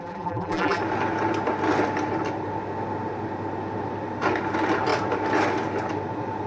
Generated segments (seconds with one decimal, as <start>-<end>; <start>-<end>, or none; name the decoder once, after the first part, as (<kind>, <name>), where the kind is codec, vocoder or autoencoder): 0.0-0.8 (vocoder, BigVGAN v2)